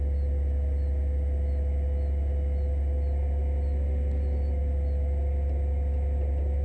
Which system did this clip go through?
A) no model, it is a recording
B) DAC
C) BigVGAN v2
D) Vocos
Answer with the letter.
A